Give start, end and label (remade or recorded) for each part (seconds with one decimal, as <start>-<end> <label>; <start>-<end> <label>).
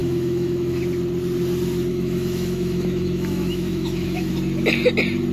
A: 0.0-0.8 remade; 0.8-1.9 recorded; 1.9-4.3 remade; 4.3-5.3 recorded